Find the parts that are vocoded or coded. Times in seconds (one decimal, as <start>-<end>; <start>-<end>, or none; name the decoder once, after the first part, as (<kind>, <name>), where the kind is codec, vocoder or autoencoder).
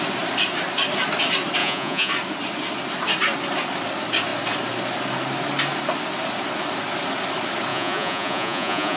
1.6-2.1 (vocoder, Vocos); 7.7-9.0